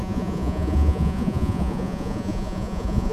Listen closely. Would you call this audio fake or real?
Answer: fake